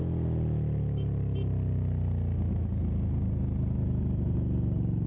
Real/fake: real